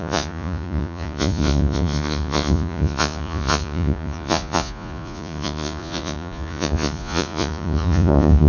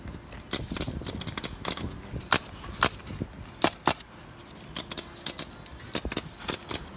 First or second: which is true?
second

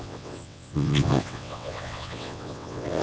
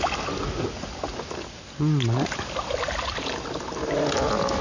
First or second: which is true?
second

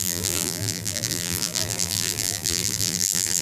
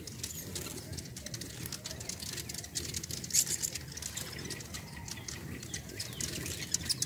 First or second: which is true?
second